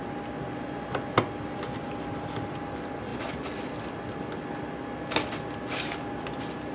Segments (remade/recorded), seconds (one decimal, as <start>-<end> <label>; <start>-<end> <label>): 0.0-6.7 recorded